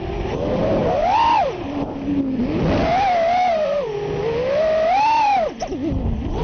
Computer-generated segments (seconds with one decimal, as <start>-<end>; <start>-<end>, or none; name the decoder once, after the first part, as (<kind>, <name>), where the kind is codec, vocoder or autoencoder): none